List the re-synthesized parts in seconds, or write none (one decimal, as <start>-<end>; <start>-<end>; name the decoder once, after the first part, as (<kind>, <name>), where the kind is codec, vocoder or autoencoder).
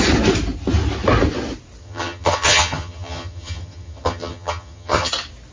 1.8-5.1 (vocoder, HiFi-GAN)